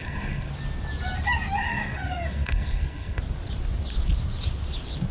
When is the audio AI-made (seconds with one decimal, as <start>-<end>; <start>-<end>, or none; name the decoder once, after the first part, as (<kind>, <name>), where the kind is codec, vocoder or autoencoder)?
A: 0.0-0.5 (codec, SNAC); 1.6-3.2